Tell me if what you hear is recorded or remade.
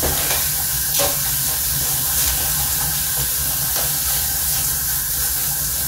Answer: recorded